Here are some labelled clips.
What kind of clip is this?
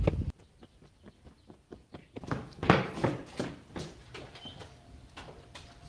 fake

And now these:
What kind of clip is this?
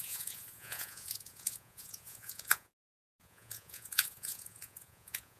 fake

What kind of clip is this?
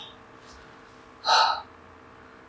real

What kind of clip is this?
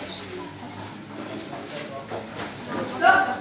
real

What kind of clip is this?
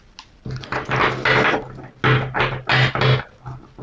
real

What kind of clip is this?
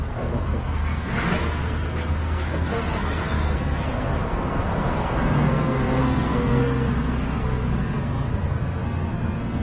fake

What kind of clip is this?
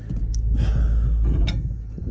real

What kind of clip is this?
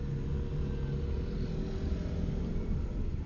real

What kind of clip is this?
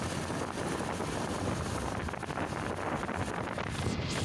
real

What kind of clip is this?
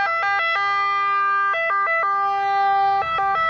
real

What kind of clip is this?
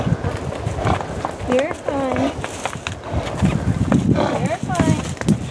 real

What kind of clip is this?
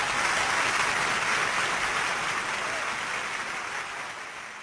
real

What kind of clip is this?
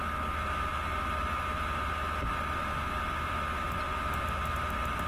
real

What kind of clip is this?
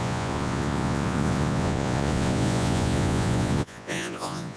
fake